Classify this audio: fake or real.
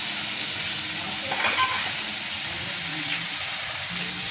real